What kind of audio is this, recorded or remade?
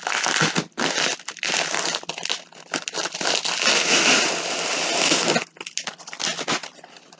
recorded